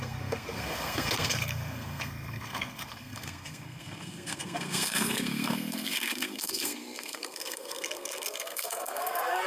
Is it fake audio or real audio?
fake